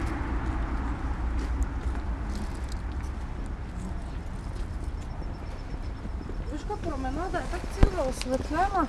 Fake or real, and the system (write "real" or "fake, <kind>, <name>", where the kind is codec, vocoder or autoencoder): real